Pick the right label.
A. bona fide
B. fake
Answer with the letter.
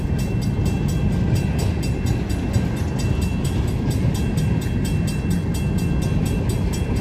A